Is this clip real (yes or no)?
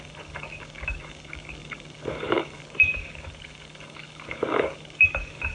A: no